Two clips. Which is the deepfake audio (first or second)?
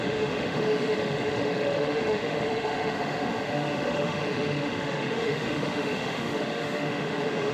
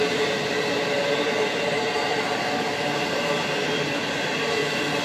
first